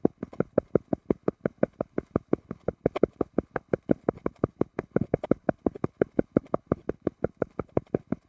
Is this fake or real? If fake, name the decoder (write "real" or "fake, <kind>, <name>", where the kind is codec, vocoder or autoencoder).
fake, codec, HILCodec